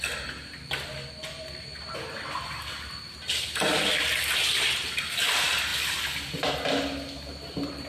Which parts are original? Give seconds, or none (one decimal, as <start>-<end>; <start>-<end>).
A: 0.0-7.9